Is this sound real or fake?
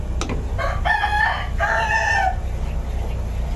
real